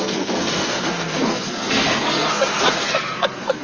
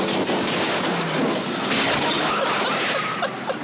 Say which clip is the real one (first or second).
second